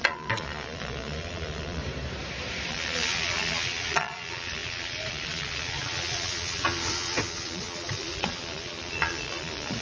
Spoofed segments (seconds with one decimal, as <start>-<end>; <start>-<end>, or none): 0.0-1.8; 2.7-9.8